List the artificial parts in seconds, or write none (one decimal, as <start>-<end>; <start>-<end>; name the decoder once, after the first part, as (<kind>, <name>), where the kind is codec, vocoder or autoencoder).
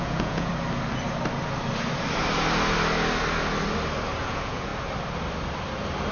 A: 0.0-0.5 (vocoder, Vocos); 4.2-4.7